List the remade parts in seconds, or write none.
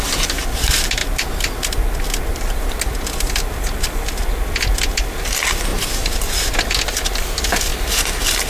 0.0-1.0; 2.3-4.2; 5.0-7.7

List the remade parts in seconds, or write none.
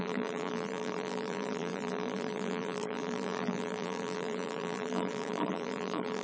0.0-6.2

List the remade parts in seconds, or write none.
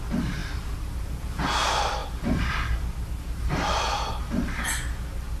0.4-1.4